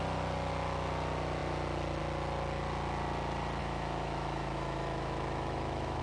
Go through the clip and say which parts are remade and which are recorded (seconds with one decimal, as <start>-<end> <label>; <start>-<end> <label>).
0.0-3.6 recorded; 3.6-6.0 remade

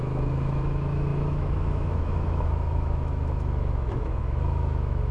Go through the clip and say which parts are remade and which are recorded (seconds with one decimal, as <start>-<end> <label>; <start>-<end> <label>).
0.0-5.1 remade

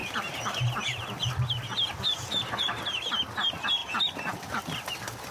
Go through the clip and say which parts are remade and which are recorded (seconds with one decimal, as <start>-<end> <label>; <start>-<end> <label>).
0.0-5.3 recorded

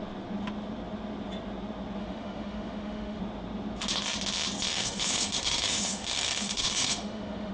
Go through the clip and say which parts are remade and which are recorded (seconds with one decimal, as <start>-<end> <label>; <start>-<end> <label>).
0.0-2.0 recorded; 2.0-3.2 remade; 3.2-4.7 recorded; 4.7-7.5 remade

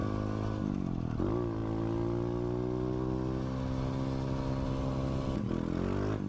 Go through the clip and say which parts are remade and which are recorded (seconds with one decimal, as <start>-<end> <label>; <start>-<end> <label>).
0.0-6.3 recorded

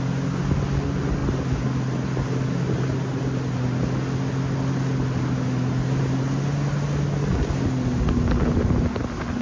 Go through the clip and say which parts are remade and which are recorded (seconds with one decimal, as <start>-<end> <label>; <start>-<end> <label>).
0.0-9.4 recorded